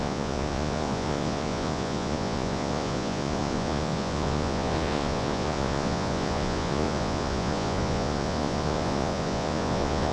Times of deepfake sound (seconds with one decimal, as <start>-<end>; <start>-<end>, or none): 0.0-10.1